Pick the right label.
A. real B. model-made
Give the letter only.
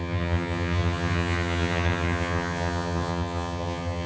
B